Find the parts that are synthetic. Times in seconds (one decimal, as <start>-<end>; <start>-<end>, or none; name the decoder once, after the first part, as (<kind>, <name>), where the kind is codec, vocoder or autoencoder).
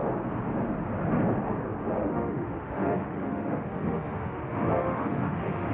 2.0-5.7 (autoencoder, DAC-VAE)